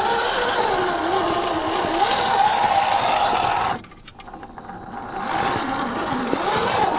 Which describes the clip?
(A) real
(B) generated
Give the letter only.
A